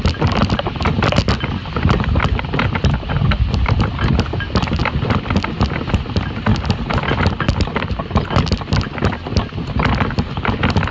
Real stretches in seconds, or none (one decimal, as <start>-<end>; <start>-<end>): 0.0-10.9